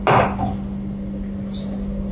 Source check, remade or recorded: recorded